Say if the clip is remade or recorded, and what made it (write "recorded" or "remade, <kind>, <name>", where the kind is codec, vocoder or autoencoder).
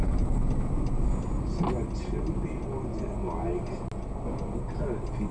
recorded